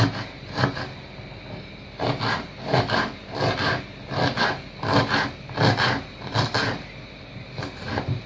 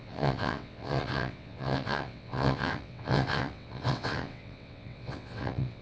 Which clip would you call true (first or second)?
first